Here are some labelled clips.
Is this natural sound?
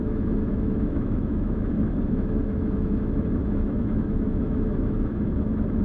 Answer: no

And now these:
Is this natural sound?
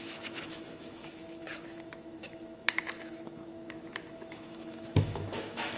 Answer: no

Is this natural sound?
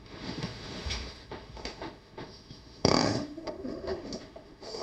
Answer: no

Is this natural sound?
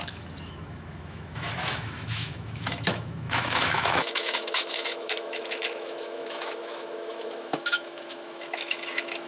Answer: no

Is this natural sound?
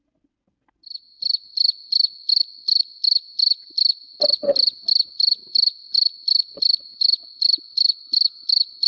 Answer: yes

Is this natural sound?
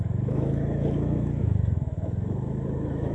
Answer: no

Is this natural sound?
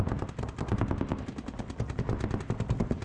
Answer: yes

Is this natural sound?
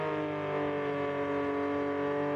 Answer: yes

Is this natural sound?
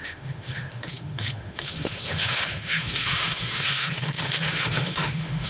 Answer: no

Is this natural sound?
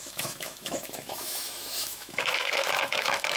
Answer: no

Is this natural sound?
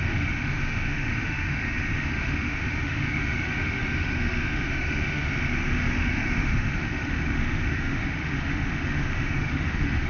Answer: no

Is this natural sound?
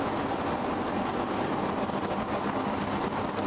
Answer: yes